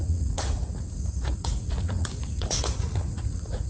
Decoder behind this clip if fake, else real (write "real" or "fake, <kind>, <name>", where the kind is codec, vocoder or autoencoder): fake, vocoder, Vocos